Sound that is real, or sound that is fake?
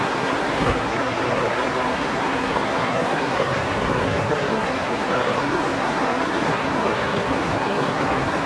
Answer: fake